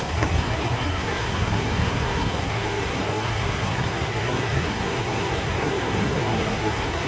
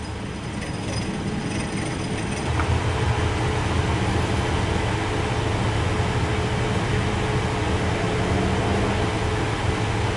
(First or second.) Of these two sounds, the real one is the second